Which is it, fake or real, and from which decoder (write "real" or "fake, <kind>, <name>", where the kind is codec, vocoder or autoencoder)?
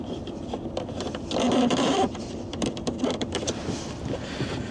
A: fake, vocoder, BigVGAN v2